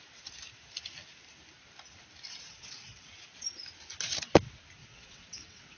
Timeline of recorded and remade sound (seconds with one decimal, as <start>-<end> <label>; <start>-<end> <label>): 0.0-2.3 recorded; 2.3-3.1 remade; 3.1-4.8 recorded; 4.8-5.8 remade

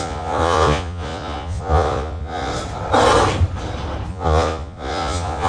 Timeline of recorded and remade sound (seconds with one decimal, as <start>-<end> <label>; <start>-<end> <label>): 0.0-2.5 remade; 2.5-4.1 recorded; 4.1-5.5 remade

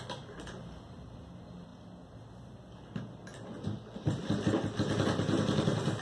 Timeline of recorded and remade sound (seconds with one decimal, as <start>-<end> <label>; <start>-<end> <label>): 0.0-1.7 remade; 1.7-2.4 recorded; 2.4-3.2 remade; 3.2-4.9 recorded; 4.9-6.0 remade